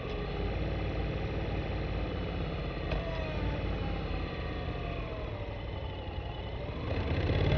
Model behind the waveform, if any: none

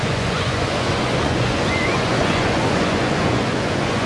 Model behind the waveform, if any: vocoder, Vocos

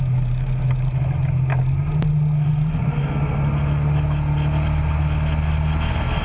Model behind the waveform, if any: none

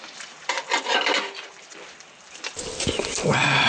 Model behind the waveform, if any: vocoder, BigVGAN v2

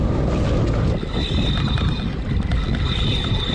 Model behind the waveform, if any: none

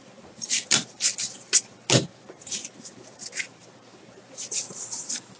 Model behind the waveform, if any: none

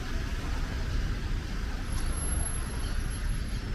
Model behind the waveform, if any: none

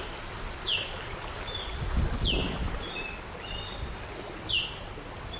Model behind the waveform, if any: none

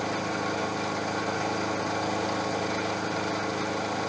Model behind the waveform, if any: none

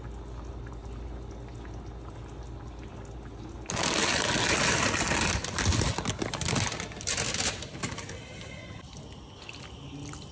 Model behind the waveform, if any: none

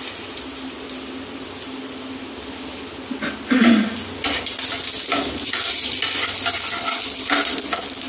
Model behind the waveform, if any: none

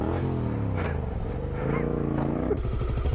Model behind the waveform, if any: none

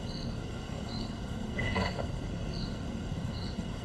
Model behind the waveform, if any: codec, SNAC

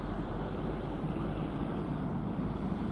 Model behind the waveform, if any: vocoder, BigVGAN v2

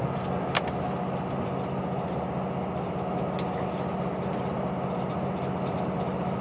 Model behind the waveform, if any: none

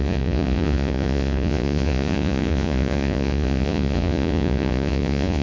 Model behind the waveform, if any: vocoder, Vocos